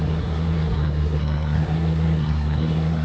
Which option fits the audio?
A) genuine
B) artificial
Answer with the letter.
B